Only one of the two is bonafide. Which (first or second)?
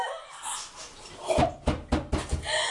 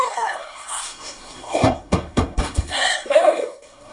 first